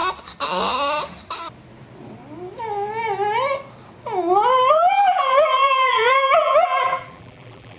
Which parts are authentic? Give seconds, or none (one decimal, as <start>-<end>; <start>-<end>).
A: 0.0-4.7